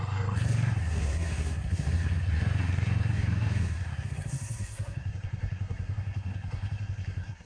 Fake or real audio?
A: fake